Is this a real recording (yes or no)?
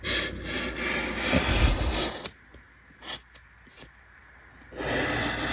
yes